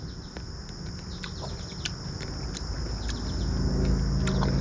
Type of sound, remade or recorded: recorded